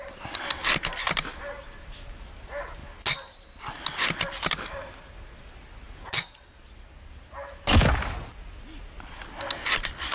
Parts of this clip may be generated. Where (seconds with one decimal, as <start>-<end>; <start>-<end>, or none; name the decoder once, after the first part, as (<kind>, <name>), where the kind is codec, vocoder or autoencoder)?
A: none